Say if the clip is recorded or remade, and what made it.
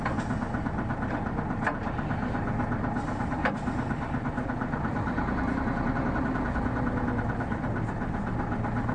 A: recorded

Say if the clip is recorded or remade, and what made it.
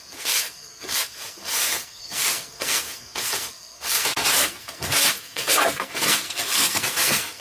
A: remade, codec, SNAC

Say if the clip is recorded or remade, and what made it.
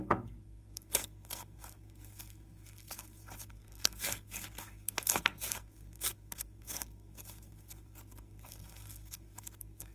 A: remade, codec, SNAC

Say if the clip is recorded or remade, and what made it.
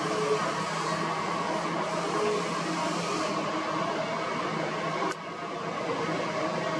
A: recorded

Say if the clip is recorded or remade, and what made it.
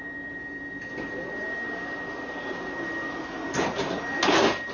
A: recorded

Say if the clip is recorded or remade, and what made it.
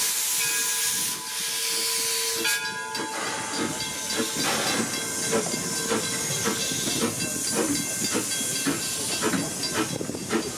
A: recorded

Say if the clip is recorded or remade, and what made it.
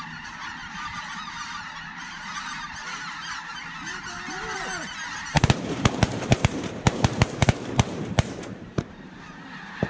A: remade, vocoder, BigVGAN v2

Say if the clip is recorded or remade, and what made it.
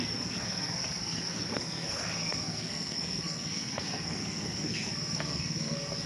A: remade, codec, SNAC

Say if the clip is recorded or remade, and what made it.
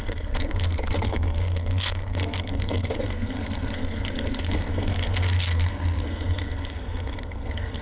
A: remade, codec, SNAC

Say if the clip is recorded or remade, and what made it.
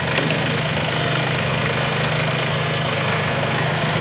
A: remade, codec, SNAC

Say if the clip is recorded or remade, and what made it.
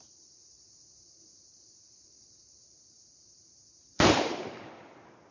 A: remade, vocoder, BigVGAN v2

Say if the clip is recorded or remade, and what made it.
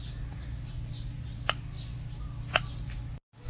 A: recorded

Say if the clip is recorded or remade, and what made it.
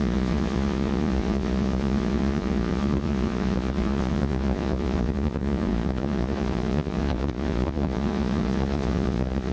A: remade, vocoder, Vocos